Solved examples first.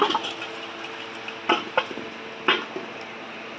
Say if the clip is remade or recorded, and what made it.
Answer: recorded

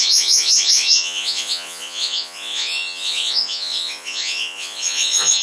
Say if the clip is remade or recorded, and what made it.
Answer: remade, vocoder, Vocos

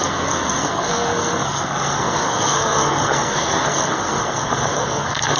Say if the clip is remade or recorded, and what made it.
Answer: remade, codec, SNAC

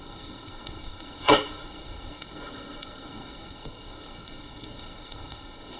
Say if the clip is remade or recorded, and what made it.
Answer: remade, codec, SNAC